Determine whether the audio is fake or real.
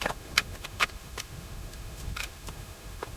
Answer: fake